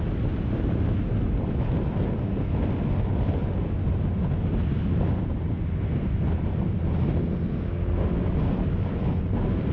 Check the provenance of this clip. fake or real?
real